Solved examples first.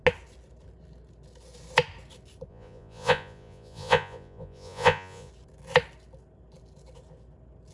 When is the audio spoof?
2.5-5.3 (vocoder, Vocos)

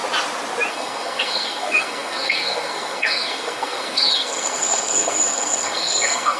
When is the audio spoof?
0.7-6.4 (codec, SNAC)

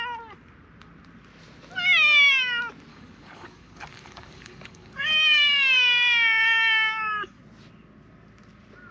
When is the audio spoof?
2.9-7.4 (codec, DAC)

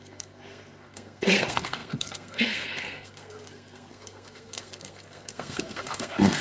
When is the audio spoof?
0.0-6.4 (codec, SNAC)